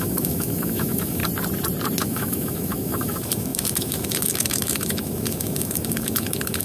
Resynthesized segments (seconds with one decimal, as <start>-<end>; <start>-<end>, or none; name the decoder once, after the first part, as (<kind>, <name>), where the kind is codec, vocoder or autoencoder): 0.0-1.2 (autoencoder, DAC-VAE); 2.0-6.6